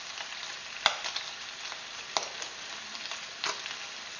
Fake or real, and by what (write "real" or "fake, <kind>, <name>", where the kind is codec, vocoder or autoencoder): real